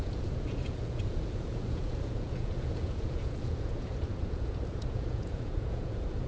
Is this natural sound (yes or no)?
no